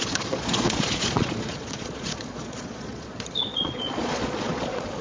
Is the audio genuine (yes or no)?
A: no